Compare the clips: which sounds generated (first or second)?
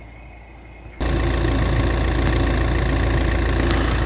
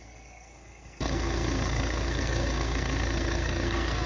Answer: second